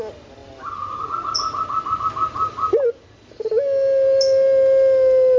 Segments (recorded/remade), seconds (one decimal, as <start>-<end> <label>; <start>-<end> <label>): 0.0-5.4 recorded